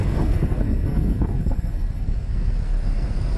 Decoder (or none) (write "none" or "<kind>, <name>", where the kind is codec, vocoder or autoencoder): codec, SNAC